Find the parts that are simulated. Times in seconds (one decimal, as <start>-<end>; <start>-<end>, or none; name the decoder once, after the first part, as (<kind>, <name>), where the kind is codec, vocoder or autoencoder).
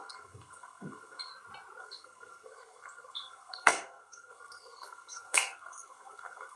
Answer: 0.0-1.3 (codec, SNAC); 1.8-6.6